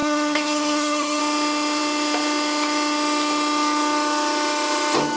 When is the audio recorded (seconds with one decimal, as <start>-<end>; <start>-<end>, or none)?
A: 1.2-5.2

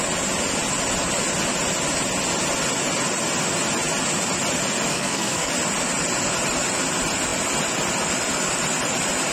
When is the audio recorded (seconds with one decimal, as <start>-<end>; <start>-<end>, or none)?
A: 0.0-4.9; 5.5-9.3